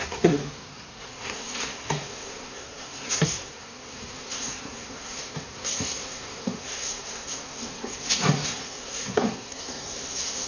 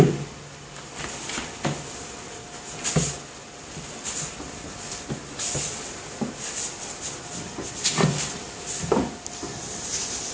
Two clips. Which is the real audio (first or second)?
second